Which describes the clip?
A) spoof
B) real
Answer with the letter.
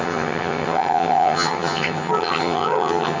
A